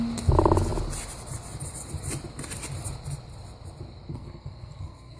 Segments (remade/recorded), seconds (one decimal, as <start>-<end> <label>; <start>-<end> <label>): 0.0-4.1 recorded; 4.1-5.2 remade